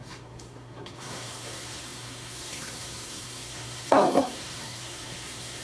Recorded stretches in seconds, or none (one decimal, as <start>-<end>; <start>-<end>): none